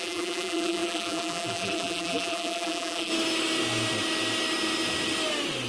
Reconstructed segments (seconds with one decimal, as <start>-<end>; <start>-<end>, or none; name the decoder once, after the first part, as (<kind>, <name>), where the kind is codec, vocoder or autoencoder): 0.0-3.1 (vocoder, BigVGAN v2)